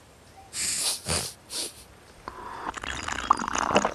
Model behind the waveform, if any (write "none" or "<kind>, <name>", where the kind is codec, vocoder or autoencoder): none